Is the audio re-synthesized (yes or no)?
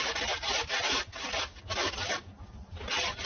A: no